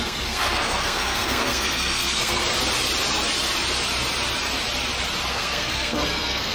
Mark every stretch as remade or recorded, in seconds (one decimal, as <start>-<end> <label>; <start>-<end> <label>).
0.0-2.4 remade; 2.4-5.3 recorded; 5.3-6.5 remade